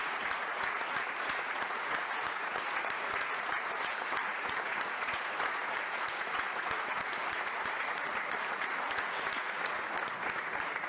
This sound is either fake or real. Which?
fake